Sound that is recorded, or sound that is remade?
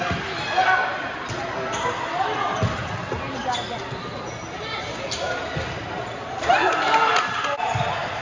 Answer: recorded